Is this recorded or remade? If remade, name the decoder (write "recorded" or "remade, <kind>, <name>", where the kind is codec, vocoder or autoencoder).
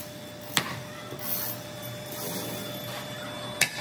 recorded